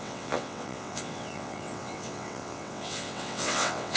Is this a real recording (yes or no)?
no